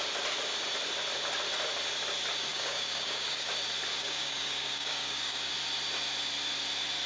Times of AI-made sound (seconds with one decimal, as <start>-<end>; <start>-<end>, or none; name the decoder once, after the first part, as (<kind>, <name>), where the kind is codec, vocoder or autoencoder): 2.5-3.5 (codec, DAC); 3.9-5.5